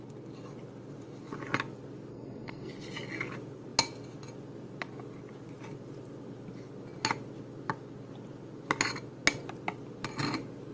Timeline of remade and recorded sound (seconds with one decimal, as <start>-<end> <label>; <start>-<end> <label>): 0.0-2.1 recorded; 2.1-2.7 remade; 2.7-10.7 recorded